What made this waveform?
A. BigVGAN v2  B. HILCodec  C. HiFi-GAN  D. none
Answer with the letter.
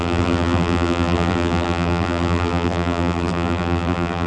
A